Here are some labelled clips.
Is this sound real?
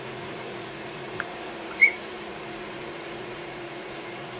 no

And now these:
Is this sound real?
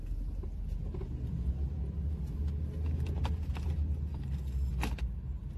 yes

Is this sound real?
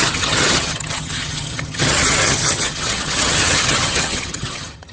no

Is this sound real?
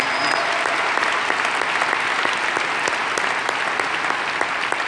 yes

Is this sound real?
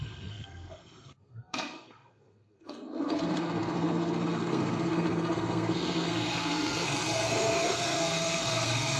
no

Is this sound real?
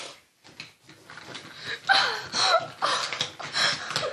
yes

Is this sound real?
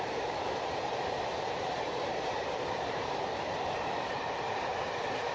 no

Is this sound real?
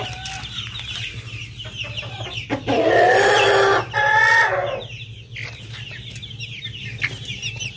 yes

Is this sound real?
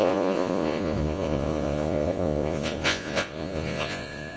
no